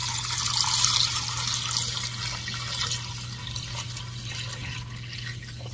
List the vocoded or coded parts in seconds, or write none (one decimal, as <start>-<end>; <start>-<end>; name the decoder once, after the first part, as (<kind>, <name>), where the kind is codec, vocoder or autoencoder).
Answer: none